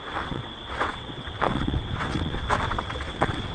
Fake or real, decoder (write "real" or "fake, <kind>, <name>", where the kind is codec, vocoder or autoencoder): fake, vocoder, WaveNeXt